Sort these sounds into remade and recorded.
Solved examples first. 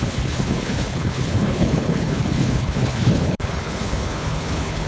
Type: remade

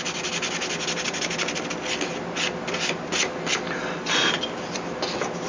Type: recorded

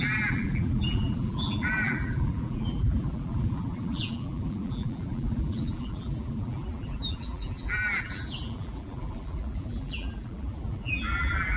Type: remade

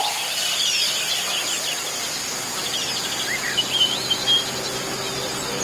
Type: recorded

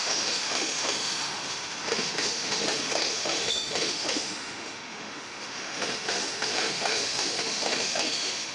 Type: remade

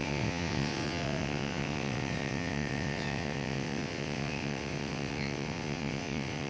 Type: remade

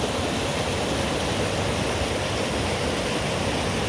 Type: recorded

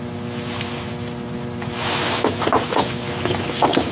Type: recorded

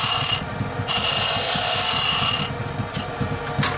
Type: recorded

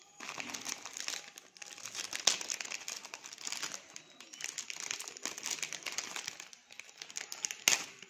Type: recorded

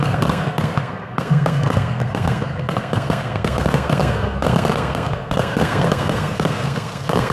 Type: remade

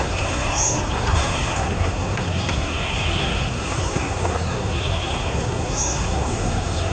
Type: remade